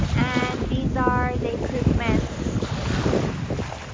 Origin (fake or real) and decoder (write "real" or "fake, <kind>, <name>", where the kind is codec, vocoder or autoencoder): real